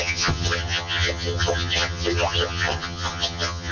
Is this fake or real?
fake